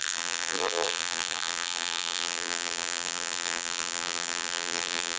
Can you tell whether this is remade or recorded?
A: remade